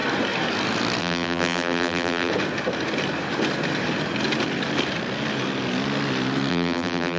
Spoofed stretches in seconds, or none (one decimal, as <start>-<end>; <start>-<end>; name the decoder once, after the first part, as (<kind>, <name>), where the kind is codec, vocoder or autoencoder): 1.0-2.3 (vocoder, BigVGAN v2); 6.5-7.2